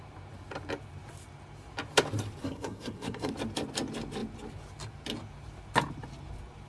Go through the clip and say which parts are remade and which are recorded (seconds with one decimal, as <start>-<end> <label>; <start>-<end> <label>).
0.0-2.4 recorded; 2.4-3.3 remade; 3.3-6.7 recorded